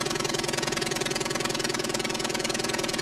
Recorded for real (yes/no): no